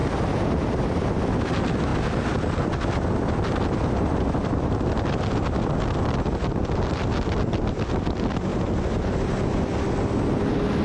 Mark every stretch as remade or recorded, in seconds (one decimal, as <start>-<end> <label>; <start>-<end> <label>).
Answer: 0.0-1.9 recorded; 1.9-4.6 remade; 4.6-10.8 recorded